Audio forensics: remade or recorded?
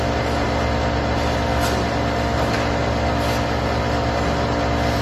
recorded